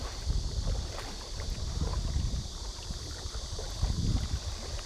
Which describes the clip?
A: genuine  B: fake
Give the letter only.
A